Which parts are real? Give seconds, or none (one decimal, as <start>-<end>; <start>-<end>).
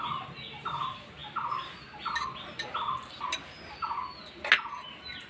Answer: 0.0-5.3